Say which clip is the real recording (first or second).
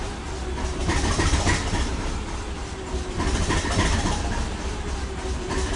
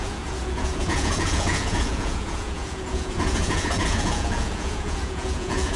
first